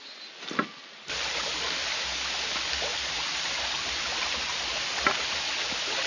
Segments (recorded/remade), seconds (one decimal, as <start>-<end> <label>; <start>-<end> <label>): 0.0-6.1 recorded